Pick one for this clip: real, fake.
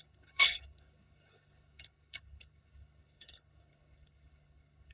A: fake